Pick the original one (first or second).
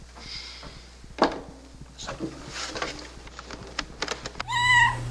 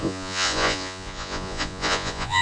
first